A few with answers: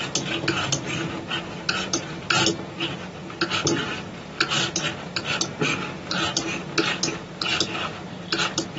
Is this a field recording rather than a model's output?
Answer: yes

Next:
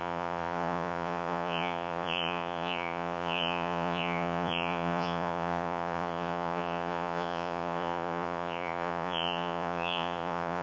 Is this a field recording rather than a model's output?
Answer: no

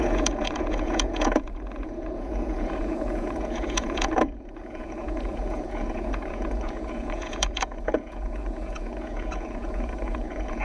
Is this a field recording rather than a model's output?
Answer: no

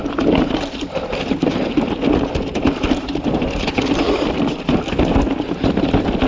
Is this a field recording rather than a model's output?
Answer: yes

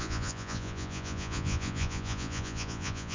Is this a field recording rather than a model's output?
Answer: no